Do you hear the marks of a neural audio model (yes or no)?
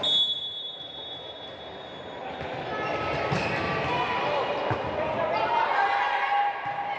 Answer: no